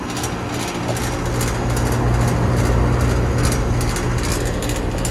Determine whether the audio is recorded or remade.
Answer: recorded